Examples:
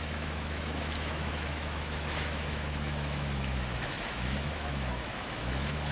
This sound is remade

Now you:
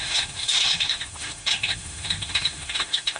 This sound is remade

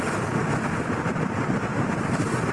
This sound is recorded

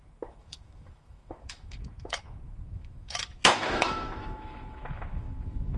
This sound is remade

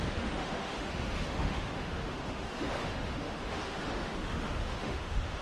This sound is remade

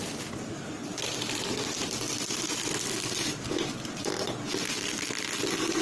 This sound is recorded